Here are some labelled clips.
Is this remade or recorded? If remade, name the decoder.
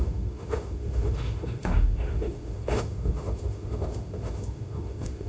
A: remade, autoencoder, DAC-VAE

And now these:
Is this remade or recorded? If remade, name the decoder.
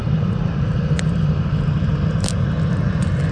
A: recorded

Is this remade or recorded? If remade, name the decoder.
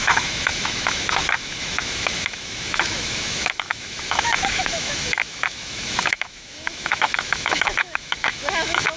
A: remade, autoencoder, DAC-VAE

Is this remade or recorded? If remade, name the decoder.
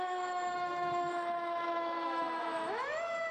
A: remade, autoencoder, DAC-VAE